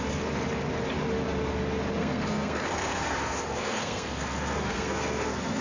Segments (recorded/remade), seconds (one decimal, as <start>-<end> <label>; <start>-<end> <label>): 0.0-2.0 recorded; 2.0-5.6 remade